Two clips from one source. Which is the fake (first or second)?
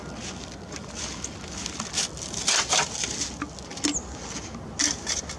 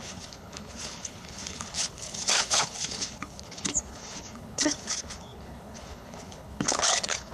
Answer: second